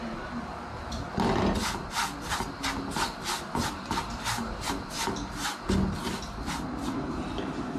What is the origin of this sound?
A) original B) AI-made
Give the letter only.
A